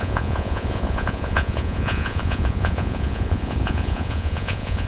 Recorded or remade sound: remade